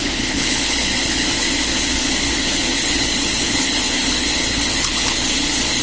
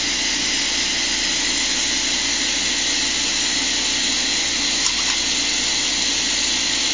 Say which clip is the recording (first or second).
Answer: second